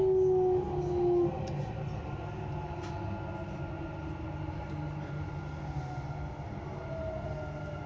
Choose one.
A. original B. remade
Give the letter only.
A